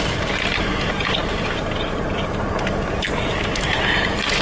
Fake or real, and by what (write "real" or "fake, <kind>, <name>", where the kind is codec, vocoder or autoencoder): fake, vocoder, BigVGAN v2